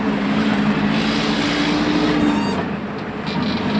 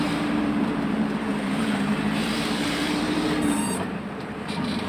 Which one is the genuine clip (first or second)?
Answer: first